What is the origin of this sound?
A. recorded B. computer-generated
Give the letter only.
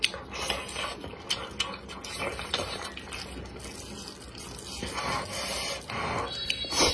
A